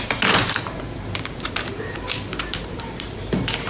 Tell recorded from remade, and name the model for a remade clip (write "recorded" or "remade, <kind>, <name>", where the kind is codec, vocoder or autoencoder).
remade, vocoder, BigVGAN v2